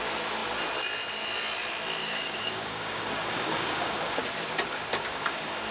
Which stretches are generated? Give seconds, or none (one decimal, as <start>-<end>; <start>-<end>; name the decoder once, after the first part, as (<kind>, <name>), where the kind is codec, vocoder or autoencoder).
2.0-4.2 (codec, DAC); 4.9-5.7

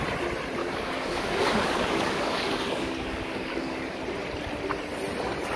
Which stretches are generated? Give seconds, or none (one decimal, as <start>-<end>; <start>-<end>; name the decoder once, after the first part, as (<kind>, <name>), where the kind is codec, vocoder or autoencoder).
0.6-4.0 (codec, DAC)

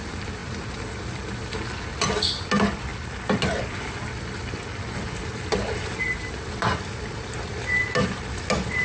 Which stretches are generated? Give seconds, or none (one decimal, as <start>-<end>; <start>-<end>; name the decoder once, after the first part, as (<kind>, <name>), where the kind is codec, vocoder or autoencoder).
none

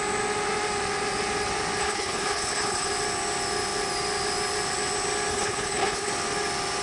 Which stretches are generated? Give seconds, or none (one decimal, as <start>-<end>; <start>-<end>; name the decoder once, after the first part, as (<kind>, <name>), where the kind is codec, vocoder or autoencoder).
1.8-2.9 (codec, HILCodec); 5.3-6.1

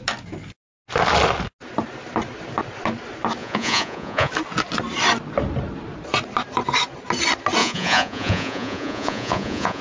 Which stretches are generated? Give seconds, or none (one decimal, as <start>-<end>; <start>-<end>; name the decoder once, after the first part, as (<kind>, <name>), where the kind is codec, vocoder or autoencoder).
3.4-4.3 (vocoder, Vocos); 7.6-9.8

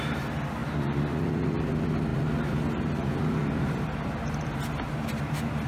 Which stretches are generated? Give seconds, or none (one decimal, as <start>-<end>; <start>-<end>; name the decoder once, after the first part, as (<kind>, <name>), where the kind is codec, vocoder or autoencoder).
none